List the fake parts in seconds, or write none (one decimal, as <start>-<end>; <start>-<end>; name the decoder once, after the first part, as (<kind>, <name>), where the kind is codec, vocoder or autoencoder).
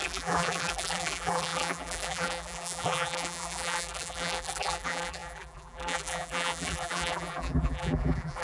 0.0-8.4 (vocoder, BigVGAN v2)